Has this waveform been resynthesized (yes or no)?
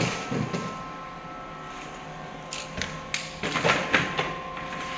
no